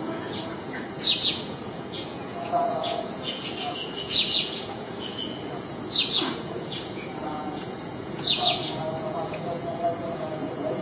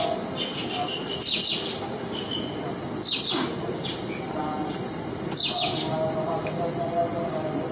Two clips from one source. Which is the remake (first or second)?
first